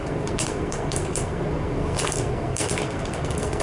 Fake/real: fake